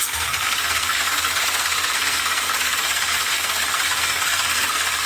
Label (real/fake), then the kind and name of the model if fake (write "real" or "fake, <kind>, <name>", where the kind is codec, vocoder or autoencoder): fake, codec, SNAC